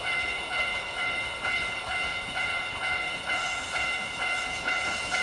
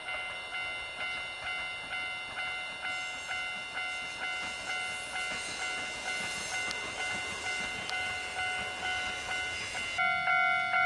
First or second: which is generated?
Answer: first